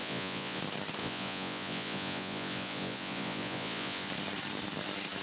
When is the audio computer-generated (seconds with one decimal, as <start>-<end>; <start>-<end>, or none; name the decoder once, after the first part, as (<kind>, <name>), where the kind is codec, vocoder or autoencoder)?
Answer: 0.0-0.6 (vocoder, Vocos); 1.0-4.1

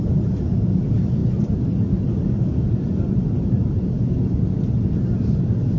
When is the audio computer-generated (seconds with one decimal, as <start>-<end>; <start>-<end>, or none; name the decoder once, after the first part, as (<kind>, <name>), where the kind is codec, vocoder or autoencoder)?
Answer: none

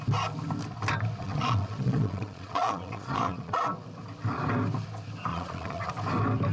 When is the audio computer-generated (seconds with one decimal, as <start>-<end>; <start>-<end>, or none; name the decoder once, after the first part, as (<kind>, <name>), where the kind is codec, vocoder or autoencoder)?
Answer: 1.2-3.6 (vocoder, Vocos); 5.3-5.9